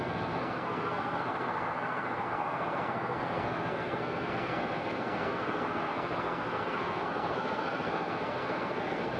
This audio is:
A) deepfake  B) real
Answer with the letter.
A